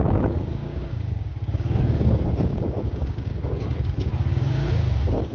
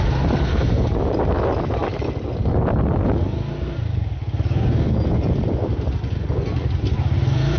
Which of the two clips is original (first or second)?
second